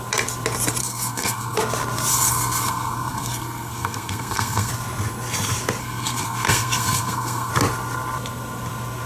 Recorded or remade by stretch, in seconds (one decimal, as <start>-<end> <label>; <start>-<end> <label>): 0.0-0.8 recorded; 0.8-1.6 remade; 1.6-2.1 recorded; 2.1-4.7 remade; 4.7-5.8 recorded; 5.8-7.5 remade; 7.5-9.1 recorded

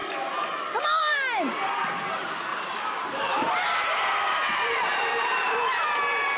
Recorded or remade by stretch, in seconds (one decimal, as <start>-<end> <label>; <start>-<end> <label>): 0.0-1.0 recorded; 1.0-6.4 remade

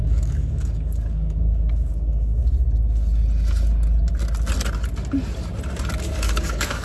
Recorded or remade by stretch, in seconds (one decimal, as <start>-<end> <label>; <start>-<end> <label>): 0.0-2.4 remade; 2.4-6.0 recorded; 6.0-6.8 remade